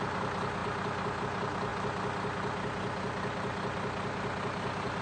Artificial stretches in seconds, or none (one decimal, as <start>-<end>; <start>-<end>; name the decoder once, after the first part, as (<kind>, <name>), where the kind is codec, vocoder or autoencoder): none